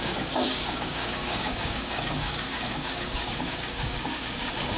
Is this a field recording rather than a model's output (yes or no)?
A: no